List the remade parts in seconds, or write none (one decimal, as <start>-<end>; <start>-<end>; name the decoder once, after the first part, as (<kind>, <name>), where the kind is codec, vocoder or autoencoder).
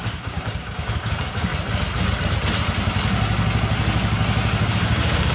0.0-1.5 (codec, DAC); 4.7-5.3